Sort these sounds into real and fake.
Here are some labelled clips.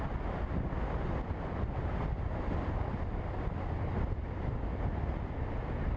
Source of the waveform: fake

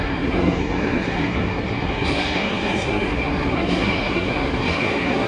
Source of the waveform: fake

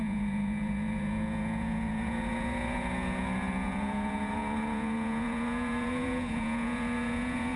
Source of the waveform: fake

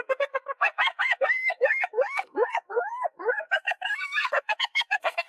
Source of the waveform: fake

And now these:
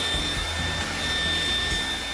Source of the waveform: real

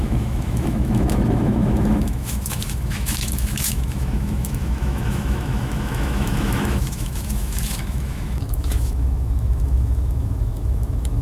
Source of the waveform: fake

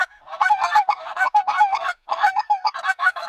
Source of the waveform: fake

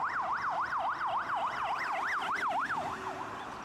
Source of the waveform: real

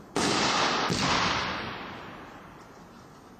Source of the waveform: real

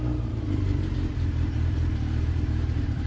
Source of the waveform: fake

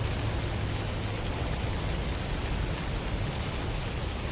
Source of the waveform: real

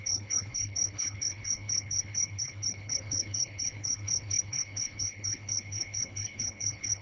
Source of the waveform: fake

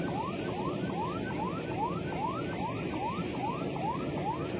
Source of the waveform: real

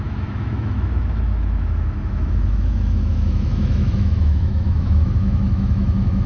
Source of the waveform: fake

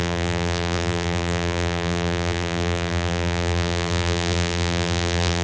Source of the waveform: fake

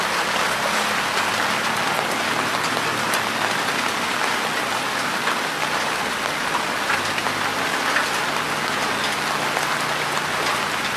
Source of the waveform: real